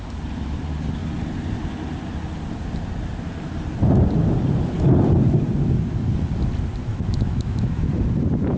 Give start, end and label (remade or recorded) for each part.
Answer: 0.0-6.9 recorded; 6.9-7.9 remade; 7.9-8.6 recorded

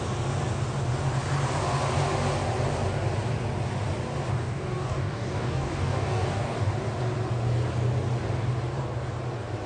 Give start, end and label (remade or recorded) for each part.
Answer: 0.0-4.3 recorded; 4.3-6.7 remade; 6.7-9.7 recorded

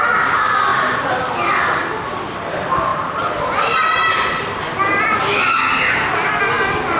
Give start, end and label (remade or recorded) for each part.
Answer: 0.0-7.0 recorded

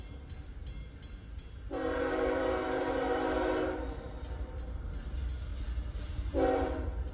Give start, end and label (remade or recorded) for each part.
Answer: 0.0-7.1 remade

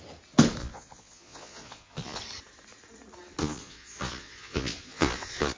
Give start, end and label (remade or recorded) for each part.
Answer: 0.0-0.6 recorded; 0.6-2.2 remade; 2.2-3.4 recorded; 3.4-5.6 remade

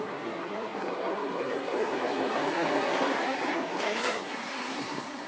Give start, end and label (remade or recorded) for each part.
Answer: 0.0-5.3 remade